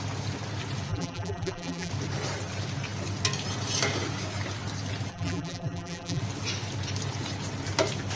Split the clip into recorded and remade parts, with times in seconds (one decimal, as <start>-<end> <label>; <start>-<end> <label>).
0.0-0.9 recorded; 0.9-1.9 remade; 1.9-5.1 recorded; 5.1-6.2 remade; 6.2-8.2 recorded

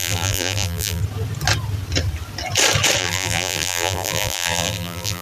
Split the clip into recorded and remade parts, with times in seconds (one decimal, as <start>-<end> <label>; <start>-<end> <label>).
0.0-1.0 remade; 1.0-3.0 recorded; 3.0-5.2 remade